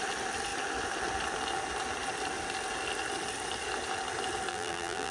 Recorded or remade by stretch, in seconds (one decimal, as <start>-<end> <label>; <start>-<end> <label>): 0.0-4.5 recorded; 4.5-5.1 remade